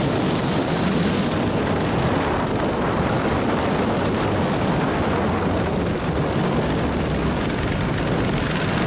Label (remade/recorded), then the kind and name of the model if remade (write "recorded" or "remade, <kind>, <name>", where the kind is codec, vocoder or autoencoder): recorded